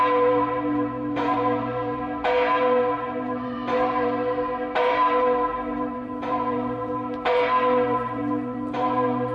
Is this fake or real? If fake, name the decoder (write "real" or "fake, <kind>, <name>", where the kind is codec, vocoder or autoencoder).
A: fake, vocoder, BigVGAN v2